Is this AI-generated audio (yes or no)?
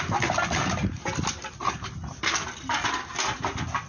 yes